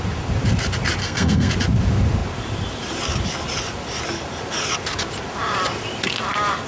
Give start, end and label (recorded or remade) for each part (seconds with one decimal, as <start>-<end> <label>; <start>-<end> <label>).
0.0-1.0 recorded; 1.0-1.5 remade; 1.5-6.7 recorded